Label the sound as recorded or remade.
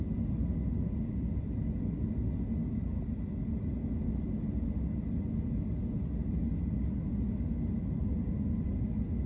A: recorded